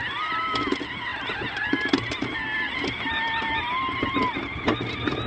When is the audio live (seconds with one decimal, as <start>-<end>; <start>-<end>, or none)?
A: 0.0-5.3